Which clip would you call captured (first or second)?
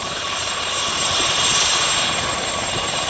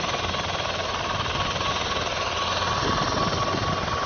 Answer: second